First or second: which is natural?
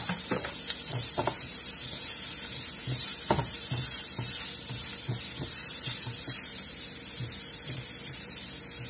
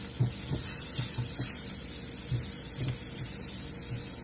second